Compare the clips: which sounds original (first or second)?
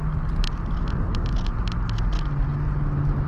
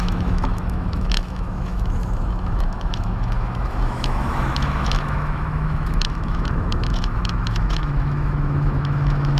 first